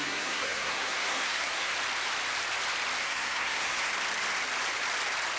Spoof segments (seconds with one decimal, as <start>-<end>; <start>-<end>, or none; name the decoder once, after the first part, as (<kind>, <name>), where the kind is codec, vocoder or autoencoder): 0.0-1.7 (codec, SNAC); 3.0-3.9